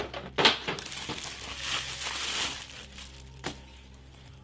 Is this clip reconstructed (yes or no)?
no